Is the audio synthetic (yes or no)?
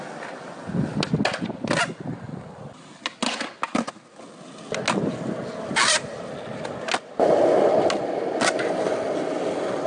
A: no